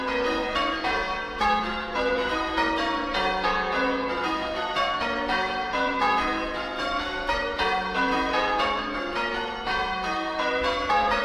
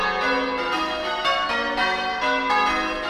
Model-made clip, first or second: first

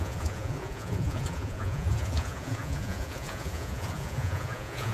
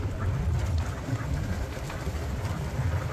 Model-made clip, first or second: first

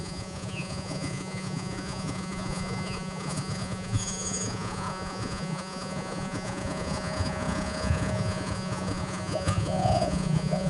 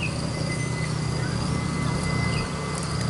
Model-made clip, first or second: first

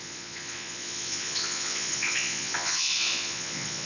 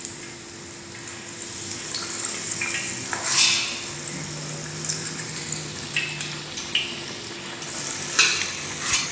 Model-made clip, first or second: first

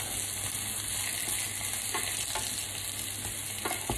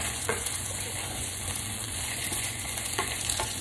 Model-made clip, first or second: second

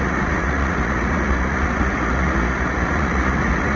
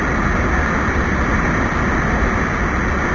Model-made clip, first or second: first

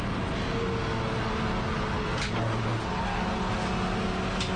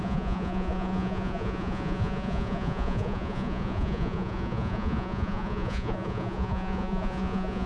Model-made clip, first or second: second